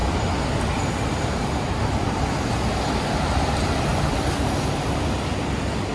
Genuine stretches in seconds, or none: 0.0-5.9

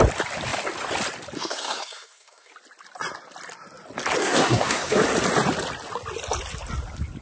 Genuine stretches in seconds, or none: 0.0-1.4; 2.5-4.2; 5.0-7.2

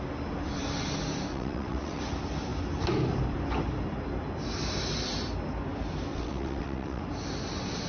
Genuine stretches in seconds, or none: 0.0-1.3; 2.0-6.1; 7.0-7.9

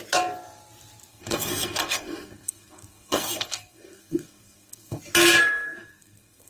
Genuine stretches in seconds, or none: 0.0-1.1; 5.0-5.4